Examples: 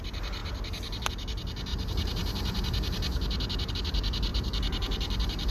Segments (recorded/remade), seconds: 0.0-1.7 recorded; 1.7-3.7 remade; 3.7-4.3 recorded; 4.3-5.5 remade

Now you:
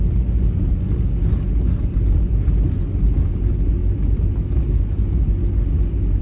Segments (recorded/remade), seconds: 0.0-3.8 recorded; 3.8-5.3 remade; 5.3-6.2 recorded

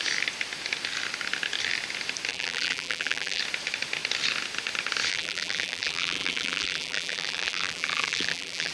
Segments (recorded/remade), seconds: 0.0-2.3 recorded; 2.3-3.4 remade; 3.4-5.1 recorded; 5.1-8.7 remade